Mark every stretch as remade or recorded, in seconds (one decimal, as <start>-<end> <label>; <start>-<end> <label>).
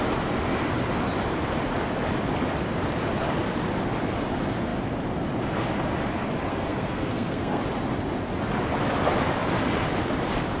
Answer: 0.0-6.5 recorded; 6.5-7.6 remade; 7.6-10.6 recorded